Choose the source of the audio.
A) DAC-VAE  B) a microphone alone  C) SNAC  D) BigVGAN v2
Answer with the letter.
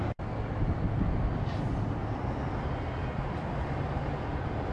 B